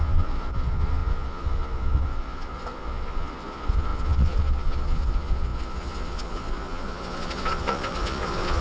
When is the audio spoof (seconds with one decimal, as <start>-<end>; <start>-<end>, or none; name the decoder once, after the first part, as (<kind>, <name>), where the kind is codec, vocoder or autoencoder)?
0.0-8.6 (vocoder, Vocos)